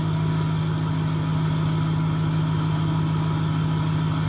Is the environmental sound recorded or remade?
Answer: recorded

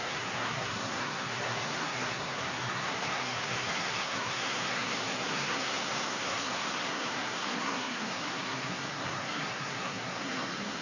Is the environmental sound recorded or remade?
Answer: remade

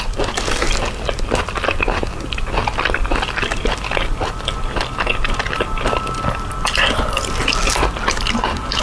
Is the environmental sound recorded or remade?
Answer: recorded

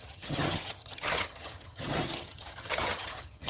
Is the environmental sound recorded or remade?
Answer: remade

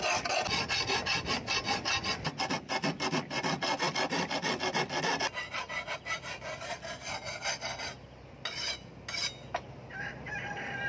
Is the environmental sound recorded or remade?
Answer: recorded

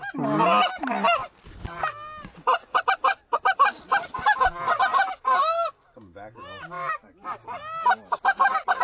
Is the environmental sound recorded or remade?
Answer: recorded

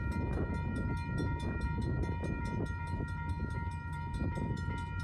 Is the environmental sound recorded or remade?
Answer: recorded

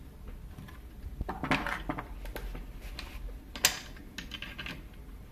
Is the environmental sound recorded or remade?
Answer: recorded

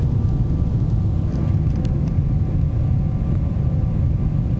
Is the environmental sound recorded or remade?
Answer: recorded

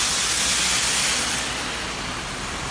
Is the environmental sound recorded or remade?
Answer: recorded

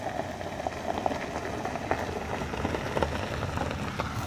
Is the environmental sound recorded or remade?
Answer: recorded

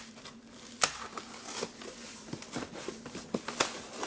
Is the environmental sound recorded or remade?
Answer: recorded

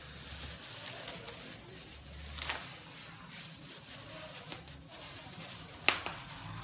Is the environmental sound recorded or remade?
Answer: recorded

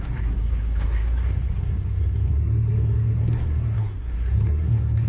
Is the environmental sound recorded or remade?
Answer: remade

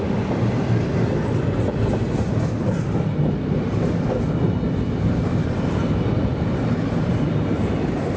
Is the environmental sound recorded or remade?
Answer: recorded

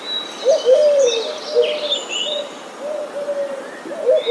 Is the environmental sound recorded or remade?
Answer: remade